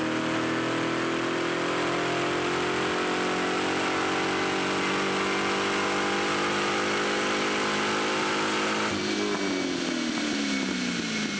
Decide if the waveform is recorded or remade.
recorded